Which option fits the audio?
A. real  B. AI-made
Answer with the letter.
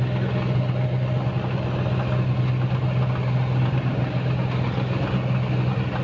A